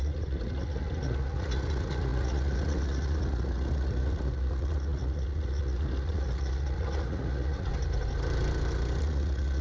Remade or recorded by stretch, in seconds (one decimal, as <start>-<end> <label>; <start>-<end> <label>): 0.0-7.7 remade; 7.7-9.0 recorded; 9.0-9.6 remade